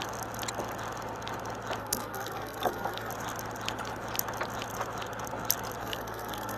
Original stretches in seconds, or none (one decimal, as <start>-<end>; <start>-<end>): 0.0-1.8; 3.1-5.8